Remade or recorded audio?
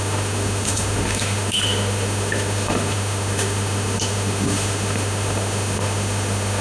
remade